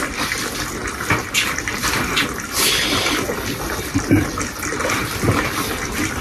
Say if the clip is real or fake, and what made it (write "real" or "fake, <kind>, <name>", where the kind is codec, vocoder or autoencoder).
fake, vocoder, BigVGAN v2